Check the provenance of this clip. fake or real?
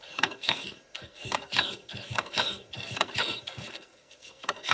fake